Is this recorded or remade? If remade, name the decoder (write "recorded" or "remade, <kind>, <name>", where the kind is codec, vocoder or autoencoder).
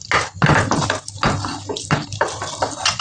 recorded